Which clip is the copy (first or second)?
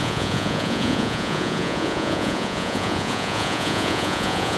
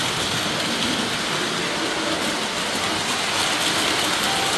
first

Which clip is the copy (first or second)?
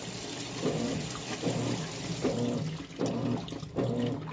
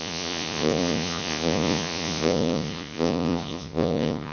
second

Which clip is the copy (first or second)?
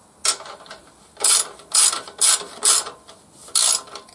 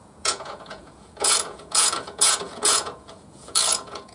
second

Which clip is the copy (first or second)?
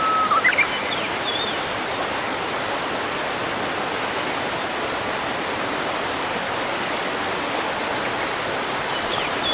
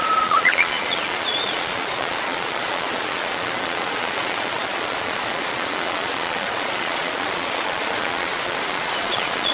second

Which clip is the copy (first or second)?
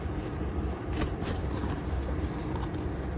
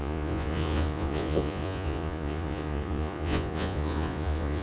second